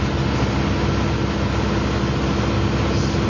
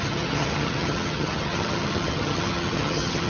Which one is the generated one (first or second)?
second